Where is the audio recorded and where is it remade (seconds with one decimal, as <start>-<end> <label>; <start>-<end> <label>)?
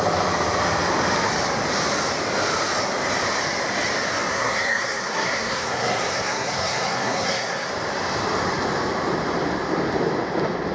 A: 0.0-4.3 recorded; 4.3-7.7 remade; 7.7-10.7 recorded